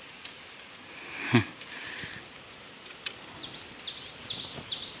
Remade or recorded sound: recorded